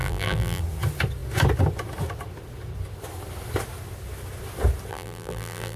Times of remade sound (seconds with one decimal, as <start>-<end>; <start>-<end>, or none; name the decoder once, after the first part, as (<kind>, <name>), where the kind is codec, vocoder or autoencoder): 0.0-0.6 (vocoder, BigVGAN v2); 4.9-5.8